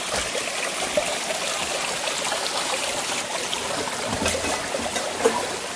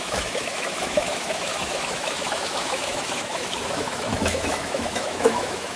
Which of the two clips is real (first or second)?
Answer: first